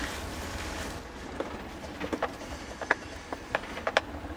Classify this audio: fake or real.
real